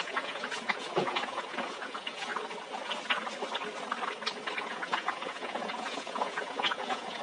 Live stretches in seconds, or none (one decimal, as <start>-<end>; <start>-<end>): 2.3-4.6